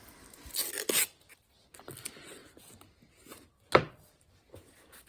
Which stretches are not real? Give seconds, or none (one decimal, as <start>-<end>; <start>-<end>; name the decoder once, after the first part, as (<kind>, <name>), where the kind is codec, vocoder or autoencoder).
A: none